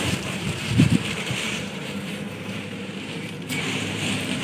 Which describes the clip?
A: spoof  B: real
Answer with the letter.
A